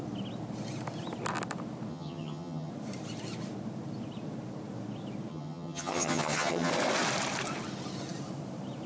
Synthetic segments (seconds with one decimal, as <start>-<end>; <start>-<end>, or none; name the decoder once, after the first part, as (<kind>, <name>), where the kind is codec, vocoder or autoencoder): 1.9-2.7 (vocoder, HiFi-GAN); 5.3-6.7